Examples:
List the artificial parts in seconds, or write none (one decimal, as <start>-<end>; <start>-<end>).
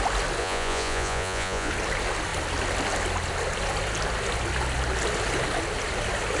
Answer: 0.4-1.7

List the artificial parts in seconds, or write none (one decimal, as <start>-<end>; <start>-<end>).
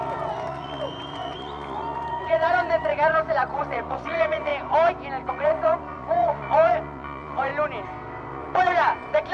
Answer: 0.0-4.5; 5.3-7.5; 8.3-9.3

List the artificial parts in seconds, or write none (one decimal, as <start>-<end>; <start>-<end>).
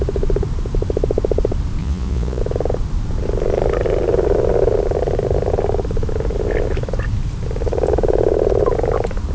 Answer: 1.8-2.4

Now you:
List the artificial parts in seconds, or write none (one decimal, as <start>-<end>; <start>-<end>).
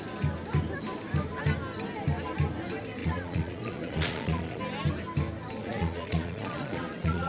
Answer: 3.0-4.6; 5.6-7.3